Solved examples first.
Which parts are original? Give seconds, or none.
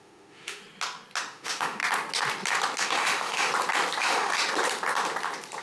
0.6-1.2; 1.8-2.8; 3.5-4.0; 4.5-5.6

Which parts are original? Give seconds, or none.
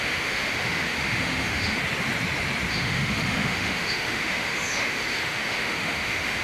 1.8-2.7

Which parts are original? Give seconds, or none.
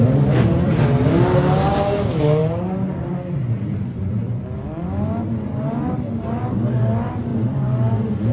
0.0-8.3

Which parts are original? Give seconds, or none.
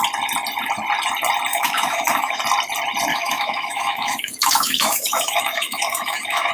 0.0-1.5; 2.4-3.1